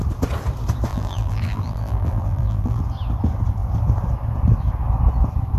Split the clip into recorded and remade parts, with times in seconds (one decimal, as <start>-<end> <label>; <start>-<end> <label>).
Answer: 0.0-0.9 recorded; 0.9-2.8 remade; 2.8-5.6 recorded